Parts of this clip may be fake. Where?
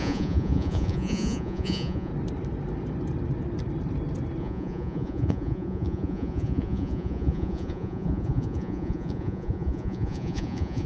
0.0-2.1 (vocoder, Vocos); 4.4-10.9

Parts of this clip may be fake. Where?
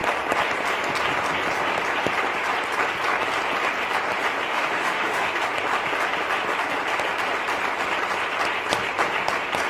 4.5-5.3 (autoencoder, DAC-VAE)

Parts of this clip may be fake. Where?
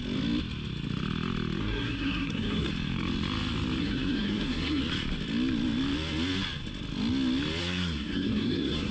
1.6-2.7 (codec, SNAC); 3.8-4.8; 7.6-8.9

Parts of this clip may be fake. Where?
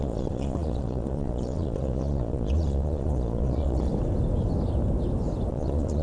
0.0-3.9 (vocoder, Vocos); 5.5-6.0